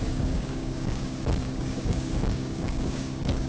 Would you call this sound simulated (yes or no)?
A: yes